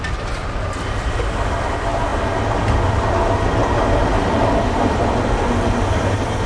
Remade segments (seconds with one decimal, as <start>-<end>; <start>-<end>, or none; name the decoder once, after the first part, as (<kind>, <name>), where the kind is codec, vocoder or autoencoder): none

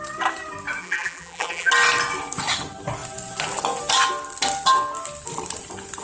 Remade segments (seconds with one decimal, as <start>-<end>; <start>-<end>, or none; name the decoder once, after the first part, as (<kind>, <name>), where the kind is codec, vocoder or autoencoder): 0.8-1.7 (vocoder, BigVGAN v2)